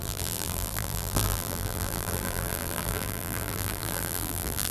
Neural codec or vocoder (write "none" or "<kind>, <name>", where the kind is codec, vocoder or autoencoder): vocoder, BigVGAN v2